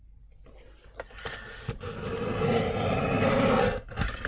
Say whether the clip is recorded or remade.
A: recorded